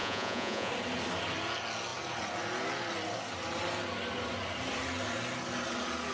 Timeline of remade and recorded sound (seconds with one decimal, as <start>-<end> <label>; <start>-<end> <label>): 0.0-0.7 remade; 0.7-6.1 recorded